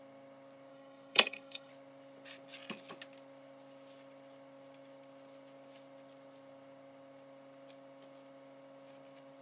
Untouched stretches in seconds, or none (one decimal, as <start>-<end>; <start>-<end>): 0.0-0.7; 1.7-9.4